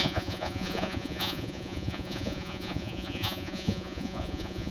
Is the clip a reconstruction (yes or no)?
yes